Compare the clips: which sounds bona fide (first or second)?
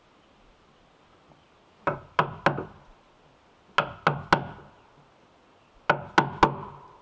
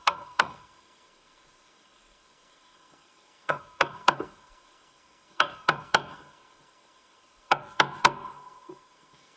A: first